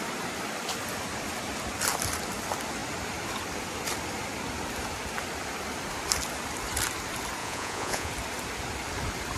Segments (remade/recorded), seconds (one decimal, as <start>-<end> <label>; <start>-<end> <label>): 0.0-7.4 recorded; 7.4-8.1 remade; 8.1-9.4 recorded